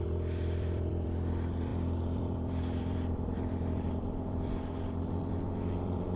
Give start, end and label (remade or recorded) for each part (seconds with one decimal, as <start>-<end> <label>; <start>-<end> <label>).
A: 0.0-6.2 remade